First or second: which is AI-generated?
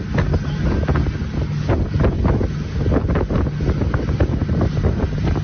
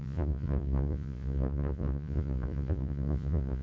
second